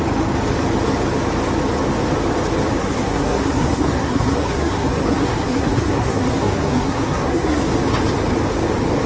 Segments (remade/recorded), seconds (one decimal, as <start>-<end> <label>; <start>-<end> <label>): 0.0-2.8 recorded; 2.8-7.6 remade; 7.6-9.1 recorded